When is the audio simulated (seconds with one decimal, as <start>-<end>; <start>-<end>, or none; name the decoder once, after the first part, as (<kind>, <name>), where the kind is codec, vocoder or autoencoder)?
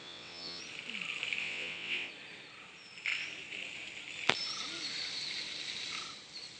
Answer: 0.0-0.6 (vocoder, WaveNeXt); 1.4-2.1